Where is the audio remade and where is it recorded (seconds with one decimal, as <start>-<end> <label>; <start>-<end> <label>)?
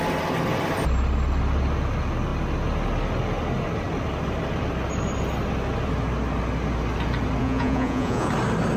0.0-7.4 recorded; 7.4-8.3 remade; 8.3-8.8 recorded